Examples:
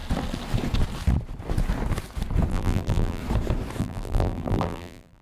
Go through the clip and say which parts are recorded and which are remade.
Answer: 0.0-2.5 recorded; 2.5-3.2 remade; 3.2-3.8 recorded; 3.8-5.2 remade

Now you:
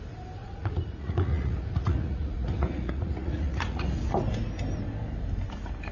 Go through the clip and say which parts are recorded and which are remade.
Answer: 0.0-0.4 recorded; 0.4-3.9 remade; 3.9-5.9 recorded

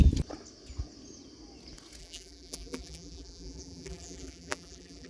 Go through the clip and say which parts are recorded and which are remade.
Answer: 0.0-2.0 recorded; 2.0-5.1 remade

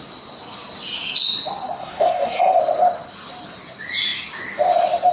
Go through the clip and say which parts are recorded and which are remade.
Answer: 0.0-1.8 recorded; 1.8-2.6 remade; 2.6-5.1 recorded

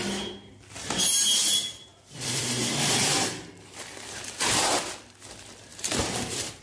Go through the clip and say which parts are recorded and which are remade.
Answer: 0.0-1.9 recorded; 1.9-4.9 remade; 4.9-5.7 recorded; 5.7-6.6 remade